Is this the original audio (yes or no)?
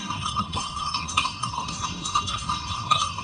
no